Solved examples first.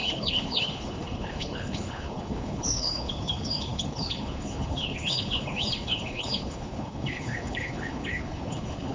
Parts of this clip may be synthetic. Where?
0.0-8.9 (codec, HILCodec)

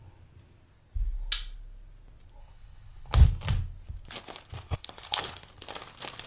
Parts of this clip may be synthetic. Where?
2.4-3.3 (codec, HILCodec); 4.7-5.5

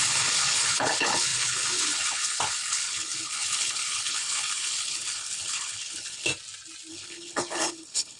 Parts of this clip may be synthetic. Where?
0.0-6.3 (codec, HILCodec); 6.9-8.2

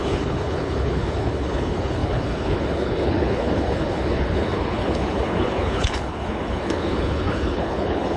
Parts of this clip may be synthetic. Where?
0.0-8.2 (codec, HILCodec)

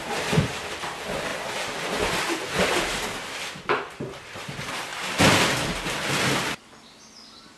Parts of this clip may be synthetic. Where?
none

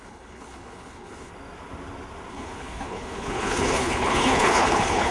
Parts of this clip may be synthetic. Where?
0.0-1.3 (codec, HILCodec); 2.3-5.1